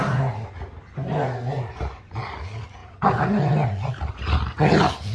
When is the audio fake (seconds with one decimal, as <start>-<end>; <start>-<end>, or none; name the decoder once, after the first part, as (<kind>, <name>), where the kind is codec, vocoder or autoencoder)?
none